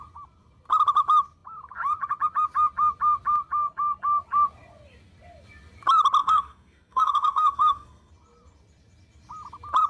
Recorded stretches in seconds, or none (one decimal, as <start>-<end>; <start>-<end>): 0.0-6.2; 8.1-9.9